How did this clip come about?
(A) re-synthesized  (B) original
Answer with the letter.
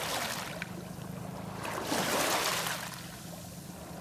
B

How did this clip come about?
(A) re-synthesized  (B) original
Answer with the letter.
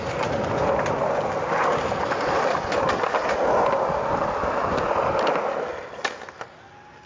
B